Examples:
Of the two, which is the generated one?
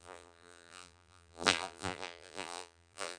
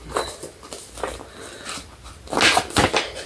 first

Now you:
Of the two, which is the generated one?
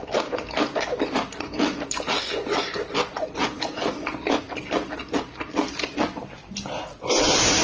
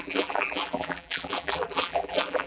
second